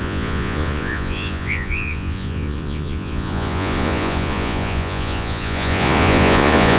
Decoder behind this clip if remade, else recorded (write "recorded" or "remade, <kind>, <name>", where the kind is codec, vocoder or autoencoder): remade, vocoder, Vocos